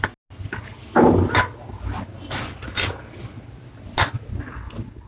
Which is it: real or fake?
real